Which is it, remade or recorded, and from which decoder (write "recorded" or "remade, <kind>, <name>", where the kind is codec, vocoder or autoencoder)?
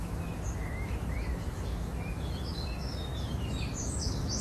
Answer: remade, autoencoder, DAC-VAE